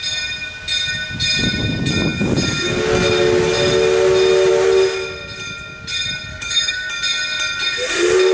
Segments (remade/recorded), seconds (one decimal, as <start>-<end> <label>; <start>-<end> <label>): 0.0-6.3 recorded; 6.3-6.9 remade; 6.9-8.3 recorded